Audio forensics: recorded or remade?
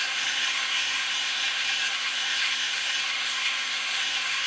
remade